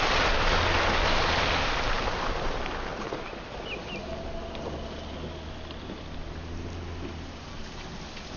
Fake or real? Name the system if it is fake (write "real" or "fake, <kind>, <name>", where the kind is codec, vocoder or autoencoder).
real